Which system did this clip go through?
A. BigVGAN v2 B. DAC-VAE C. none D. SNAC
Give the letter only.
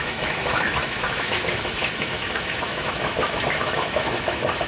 B